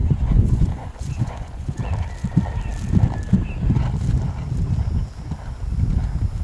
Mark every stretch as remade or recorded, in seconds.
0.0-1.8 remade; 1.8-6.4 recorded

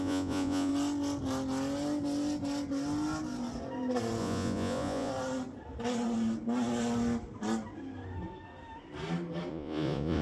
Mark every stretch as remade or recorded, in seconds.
0.0-0.7 remade; 0.7-4.2 recorded; 4.2-5.1 remade; 5.1-9.5 recorded; 9.5-10.2 remade

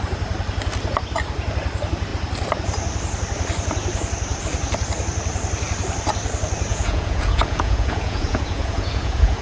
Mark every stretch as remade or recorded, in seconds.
0.0-6.7 recorded; 6.7-9.4 remade

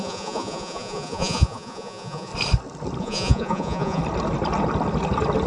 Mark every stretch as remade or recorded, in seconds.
0.0-2.3 remade; 2.3-3.0 recorded; 3.0-4.0 remade; 4.0-5.5 recorded

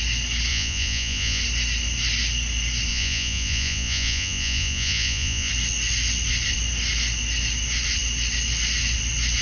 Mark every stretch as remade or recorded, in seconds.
0.0-0.5 recorded; 0.5-1.4 remade; 1.4-2.9 recorded; 2.9-5.5 remade; 5.5-9.4 recorded